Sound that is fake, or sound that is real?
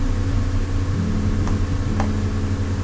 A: real